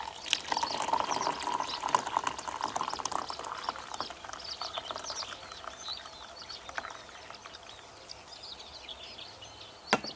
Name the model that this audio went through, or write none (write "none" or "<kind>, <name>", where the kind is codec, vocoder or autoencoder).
none